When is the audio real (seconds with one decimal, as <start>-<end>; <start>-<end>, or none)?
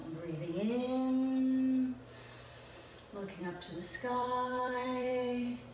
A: 0.0-3.4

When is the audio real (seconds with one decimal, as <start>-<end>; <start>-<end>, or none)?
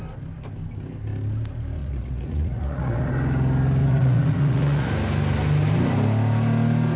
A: 0.0-1.8; 3.1-3.8; 4.9-7.0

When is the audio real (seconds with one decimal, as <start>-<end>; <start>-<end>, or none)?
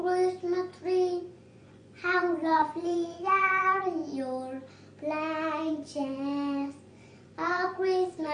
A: 0.0-1.1; 4.0-5.7